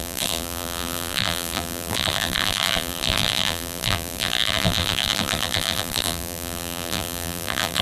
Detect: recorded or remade remade